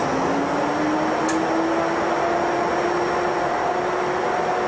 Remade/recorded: recorded